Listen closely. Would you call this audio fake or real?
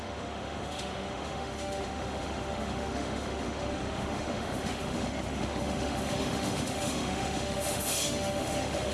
fake